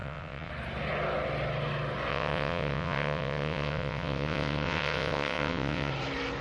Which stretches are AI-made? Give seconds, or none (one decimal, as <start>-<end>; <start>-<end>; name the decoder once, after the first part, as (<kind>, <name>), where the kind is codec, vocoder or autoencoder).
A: 0.0-0.5 (vocoder, WaveNeXt); 2.1-5.9